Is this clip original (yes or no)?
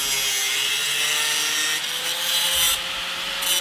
yes